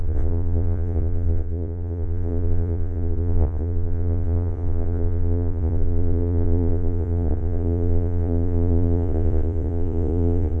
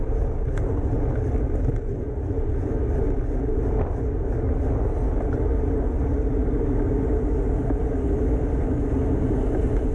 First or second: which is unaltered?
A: second